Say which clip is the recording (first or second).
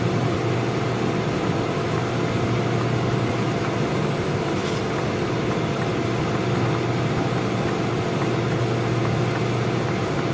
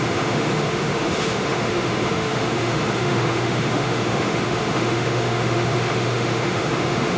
first